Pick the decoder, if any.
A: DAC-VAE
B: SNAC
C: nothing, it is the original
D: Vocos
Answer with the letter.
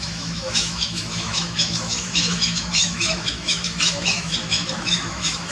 A